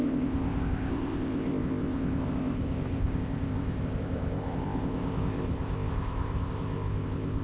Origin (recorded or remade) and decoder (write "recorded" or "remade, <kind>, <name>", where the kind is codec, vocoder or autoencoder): remade, codec, ZipCodec